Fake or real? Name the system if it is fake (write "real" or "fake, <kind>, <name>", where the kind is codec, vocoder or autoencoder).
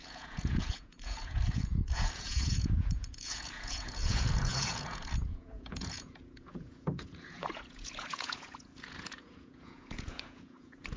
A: fake, vocoder, Vocos